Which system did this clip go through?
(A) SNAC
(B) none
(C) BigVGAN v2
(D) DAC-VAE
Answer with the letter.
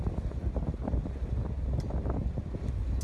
B